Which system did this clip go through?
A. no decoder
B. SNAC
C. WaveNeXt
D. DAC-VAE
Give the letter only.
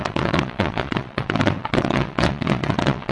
C